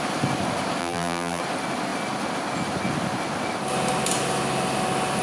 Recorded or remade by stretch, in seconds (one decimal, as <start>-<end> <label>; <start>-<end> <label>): 0.0-0.8 recorded; 0.8-1.4 remade; 1.4-5.2 recorded